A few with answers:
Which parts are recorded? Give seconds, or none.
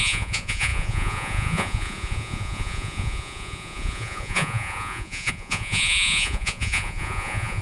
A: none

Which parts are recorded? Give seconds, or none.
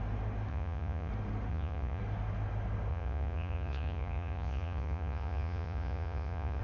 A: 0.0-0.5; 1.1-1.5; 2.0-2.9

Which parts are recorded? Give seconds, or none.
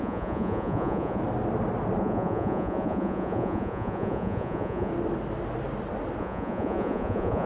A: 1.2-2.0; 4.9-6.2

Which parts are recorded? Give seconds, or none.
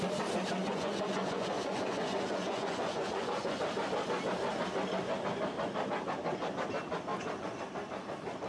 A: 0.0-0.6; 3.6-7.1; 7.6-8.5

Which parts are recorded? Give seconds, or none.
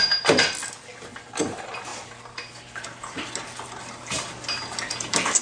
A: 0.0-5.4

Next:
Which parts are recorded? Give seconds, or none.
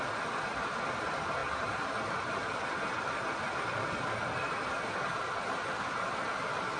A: 0.0-6.8